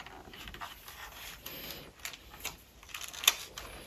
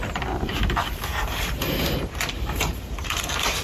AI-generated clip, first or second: second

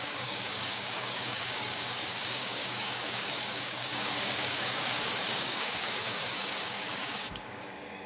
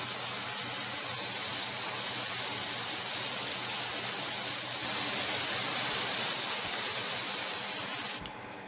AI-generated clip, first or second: first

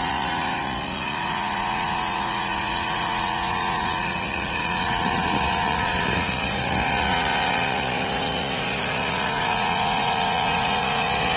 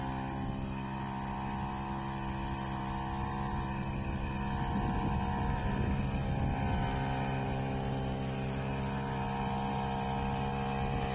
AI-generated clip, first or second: first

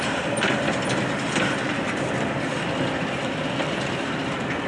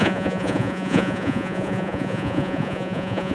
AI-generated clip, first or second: second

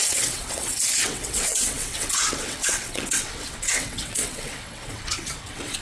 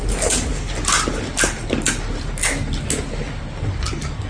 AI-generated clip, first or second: first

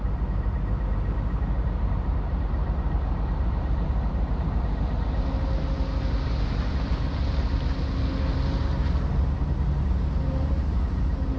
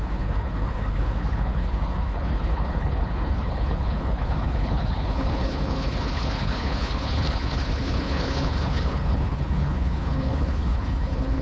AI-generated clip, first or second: second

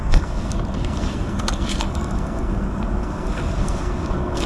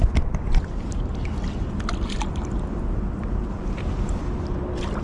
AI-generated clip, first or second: first